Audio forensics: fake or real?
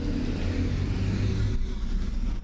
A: real